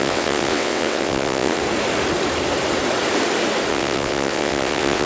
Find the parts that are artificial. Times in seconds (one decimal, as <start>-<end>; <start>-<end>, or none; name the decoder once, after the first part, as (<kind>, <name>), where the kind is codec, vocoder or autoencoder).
0.0-1.6 (vocoder, WaveNeXt); 3.7-5.1